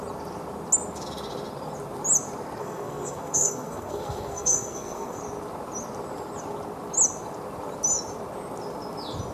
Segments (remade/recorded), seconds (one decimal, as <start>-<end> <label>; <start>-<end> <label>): 0.0-2.6 recorded; 2.6-5.2 remade; 5.2-9.3 recorded